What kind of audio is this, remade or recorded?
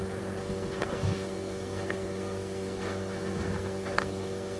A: remade